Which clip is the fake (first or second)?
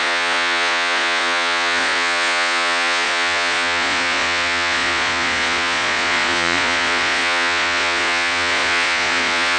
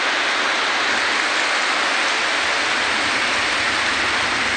first